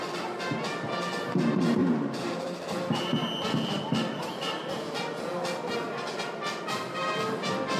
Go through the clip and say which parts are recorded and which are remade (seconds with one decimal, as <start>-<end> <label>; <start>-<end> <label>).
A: 0.0-1.8 recorded; 1.8-2.9 remade; 2.9-7.8 recorded